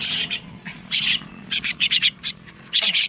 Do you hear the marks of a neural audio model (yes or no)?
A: yes